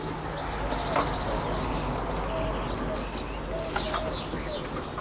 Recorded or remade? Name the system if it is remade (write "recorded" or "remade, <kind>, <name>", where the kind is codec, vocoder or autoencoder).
recorded